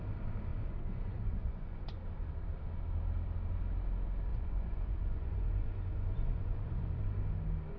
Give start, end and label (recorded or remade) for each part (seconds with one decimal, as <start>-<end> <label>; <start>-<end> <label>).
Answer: 0.0-0.5 recorded; 0.5-2.0 remade; 2.0-4.3 recorded; 4.3-7.0 remade; 7.0-7.8 recorded